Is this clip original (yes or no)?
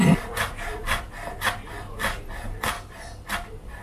yes